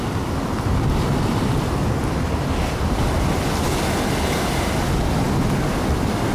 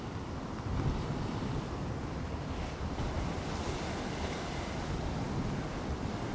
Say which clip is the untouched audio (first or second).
first